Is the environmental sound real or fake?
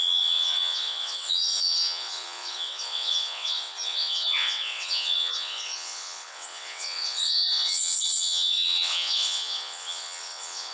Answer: fake